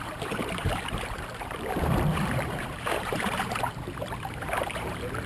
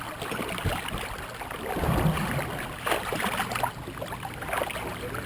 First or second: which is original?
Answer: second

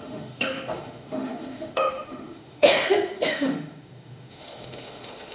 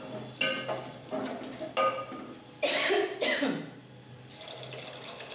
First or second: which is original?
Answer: second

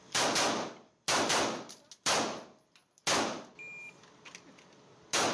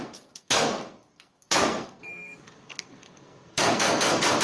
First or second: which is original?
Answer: first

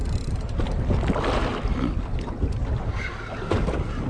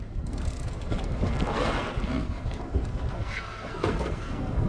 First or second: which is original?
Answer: first